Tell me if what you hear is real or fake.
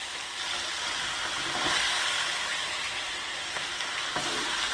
real